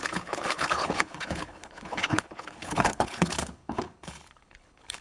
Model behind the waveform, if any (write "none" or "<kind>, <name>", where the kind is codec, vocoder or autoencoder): codec, HILCodec